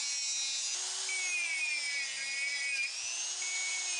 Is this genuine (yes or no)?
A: yes